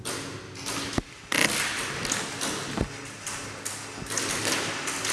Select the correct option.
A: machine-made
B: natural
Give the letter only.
B